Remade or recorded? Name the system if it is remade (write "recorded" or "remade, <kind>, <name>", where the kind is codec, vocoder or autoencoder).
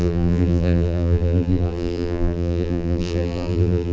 remade, vocoder, BigVGAN v2